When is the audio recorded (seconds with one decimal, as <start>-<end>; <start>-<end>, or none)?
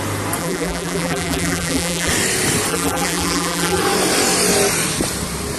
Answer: 0.0-0.4; 2.1-2.7; 3.8-5.6